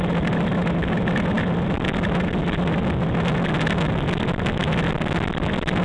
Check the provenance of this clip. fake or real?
real